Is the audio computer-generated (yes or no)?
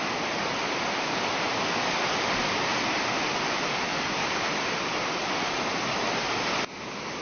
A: no